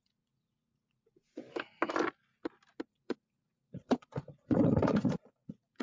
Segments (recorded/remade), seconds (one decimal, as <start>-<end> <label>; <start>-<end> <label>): 0.0-1.4 remade; 1.4-2.9 recorded; 2.9-5.8 remade